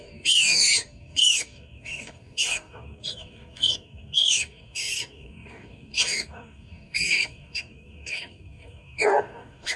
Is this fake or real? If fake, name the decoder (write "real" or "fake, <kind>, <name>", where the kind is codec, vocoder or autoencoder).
fake, codec, DAC